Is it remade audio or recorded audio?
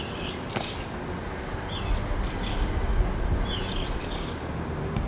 recorded